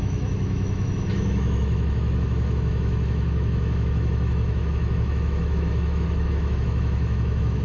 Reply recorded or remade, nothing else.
remade